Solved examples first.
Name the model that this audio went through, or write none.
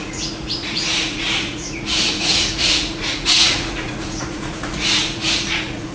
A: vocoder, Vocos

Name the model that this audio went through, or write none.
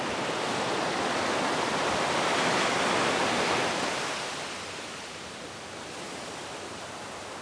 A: vocoder, BigVGAN v2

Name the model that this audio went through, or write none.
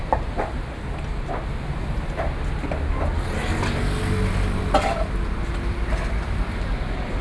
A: none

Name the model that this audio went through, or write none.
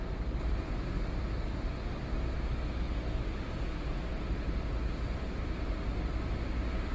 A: none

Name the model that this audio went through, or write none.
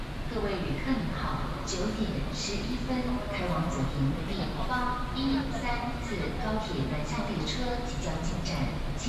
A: none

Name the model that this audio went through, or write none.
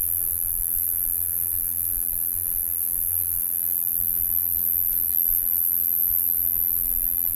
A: vocoder, BigVGAN v2